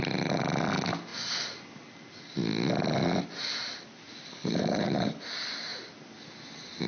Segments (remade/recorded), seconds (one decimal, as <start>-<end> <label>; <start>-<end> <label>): 0.0-4.3 recorded; 4.3-5.2 remade; 5.2-6.9 recorded